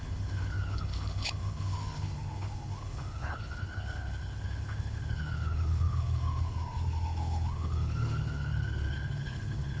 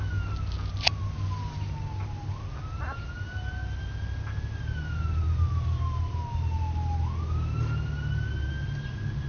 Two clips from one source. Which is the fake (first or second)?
first